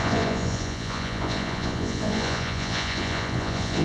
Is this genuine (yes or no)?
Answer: no